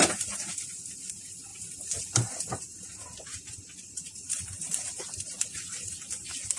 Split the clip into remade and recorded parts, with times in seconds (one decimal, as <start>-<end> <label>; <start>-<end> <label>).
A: 0.0-6.6 remade